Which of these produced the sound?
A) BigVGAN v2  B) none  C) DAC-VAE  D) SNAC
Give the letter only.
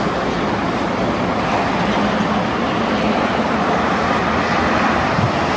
B